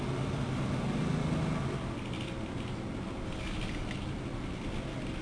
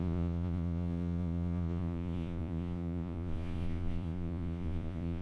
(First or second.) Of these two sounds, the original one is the first